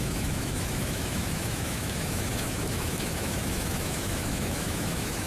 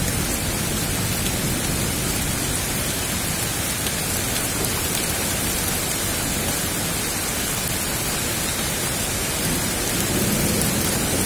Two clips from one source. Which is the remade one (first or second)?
first